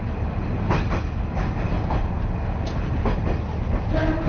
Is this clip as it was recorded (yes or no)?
yes